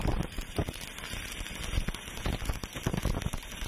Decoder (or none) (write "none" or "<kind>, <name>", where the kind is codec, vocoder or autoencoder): none